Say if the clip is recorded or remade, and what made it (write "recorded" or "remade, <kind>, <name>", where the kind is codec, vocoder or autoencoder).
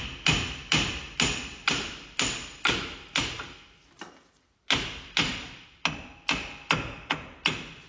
recorded